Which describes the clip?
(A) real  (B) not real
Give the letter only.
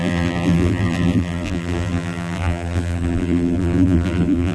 B